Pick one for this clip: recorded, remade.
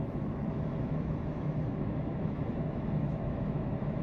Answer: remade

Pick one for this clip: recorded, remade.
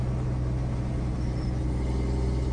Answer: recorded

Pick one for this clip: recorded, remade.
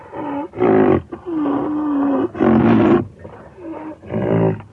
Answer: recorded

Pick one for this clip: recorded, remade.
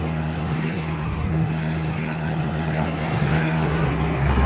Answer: remade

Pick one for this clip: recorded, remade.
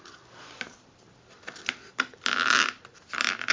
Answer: recorded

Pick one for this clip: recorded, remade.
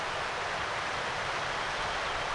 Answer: recorded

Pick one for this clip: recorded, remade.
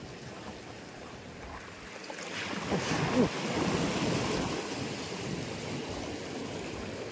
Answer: recorded